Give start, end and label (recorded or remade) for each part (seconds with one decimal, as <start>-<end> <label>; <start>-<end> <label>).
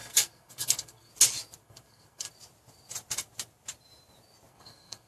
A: 0.0-1.1 remade; 1.1-1.6 recorded; 1.6-2.3 remade; 2.3-4.5 recorded; 4.5-5.1 remade